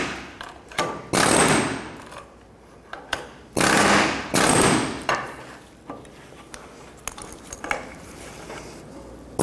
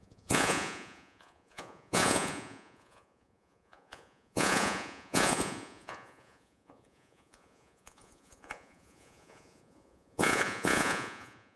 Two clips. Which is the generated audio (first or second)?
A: second